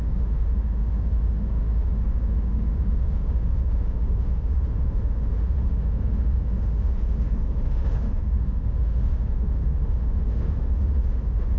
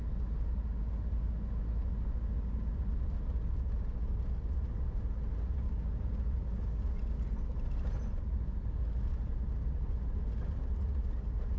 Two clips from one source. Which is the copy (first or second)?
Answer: first